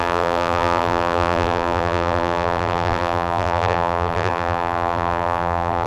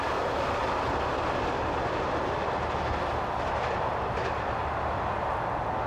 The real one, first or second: second